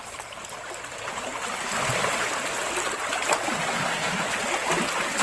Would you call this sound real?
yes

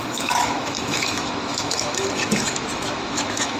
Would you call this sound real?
no